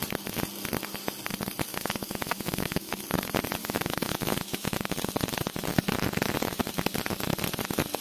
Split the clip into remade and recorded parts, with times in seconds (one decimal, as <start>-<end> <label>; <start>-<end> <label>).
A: 0.0-1.7 recorded; 1.7-3.0 remade; 3.0-3.6 recorded; 3.6-4.9 remade; 4.9-8.0 recorded

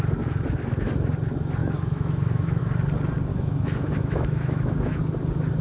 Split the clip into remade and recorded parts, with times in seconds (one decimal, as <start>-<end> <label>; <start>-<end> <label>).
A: 0.0-1.6 recorded; 1.6-2.6 remade; 2.6-3.3 recorded; 3.3-5.0 remade; 5.0-5.6 recorded

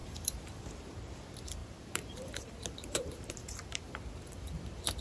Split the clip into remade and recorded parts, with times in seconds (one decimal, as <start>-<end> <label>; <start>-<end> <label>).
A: 0.0-0.9 remade; 0.9-1.6 recorded; 1.6-4.6 remade; 4.6-5.0 recorded

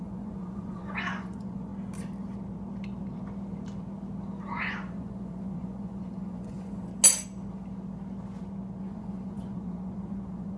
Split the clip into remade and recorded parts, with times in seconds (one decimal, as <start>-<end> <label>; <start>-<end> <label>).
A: 0.0-1.7 remade; 1.7-4.6 recorded; 4.6-6.9 remade; 6.9-8.8 recorded; 8.8-10.6 remade

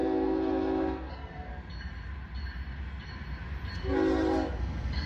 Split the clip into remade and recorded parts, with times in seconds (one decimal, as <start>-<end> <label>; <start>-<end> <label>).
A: 0.0-1.5 remade; 1.5-4.6 recorded; 4.6-5.1 remade

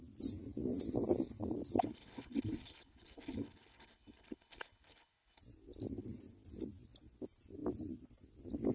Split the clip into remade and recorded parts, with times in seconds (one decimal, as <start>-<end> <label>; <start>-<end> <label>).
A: 0.0-1.8 recorded; 1.8-5.4 remade; 5.4-8.7 recorded

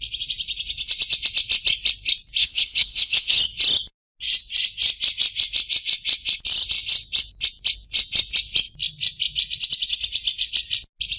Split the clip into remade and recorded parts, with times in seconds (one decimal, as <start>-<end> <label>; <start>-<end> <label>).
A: 0.0-2.4 recorded; 2.4-3.4 remade; 3.4-11.2 recorded

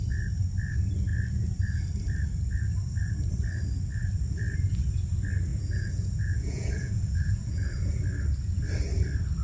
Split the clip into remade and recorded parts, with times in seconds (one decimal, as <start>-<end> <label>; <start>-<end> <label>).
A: 0.0-5.5 recorded; 5.5-8.0 remade; 8.0-9.4 recorded